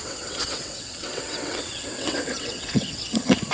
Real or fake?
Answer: fake